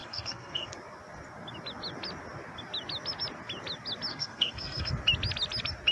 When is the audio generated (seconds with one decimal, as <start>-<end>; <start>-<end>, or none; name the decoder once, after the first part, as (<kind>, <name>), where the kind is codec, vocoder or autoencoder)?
0.0-0.7 (codec, SNAC); 4.1-4.9